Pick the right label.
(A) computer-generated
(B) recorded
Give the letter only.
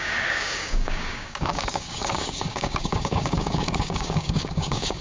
A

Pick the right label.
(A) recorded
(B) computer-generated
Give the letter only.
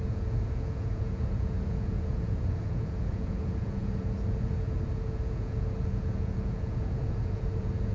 B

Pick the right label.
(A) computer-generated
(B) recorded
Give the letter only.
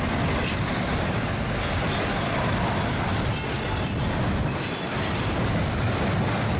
B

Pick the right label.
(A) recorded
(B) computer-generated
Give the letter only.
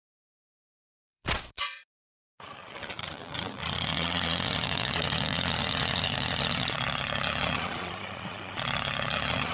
B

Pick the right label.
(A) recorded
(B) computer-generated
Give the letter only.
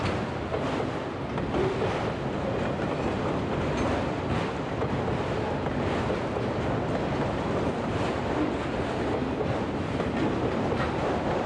A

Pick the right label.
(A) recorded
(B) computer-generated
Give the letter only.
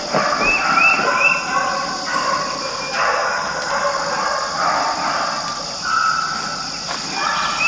A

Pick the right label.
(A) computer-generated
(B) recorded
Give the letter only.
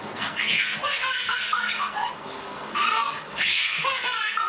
A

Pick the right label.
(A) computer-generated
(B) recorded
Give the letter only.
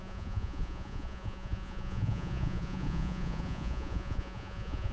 A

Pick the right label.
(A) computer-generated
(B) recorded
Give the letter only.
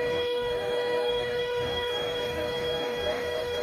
A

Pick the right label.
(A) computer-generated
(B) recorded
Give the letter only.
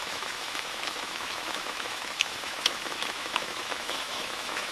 A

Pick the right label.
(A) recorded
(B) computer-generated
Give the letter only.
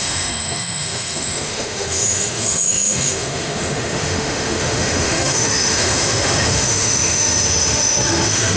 B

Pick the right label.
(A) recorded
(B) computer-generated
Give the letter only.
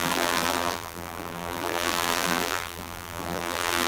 B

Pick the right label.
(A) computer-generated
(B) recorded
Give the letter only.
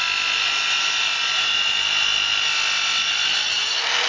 B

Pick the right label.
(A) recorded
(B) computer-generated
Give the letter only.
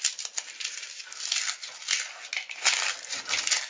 A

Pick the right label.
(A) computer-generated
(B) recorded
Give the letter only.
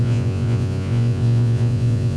A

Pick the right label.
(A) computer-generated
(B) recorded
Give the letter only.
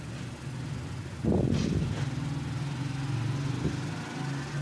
B